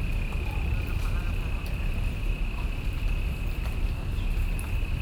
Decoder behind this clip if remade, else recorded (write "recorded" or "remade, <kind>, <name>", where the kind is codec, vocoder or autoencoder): recorded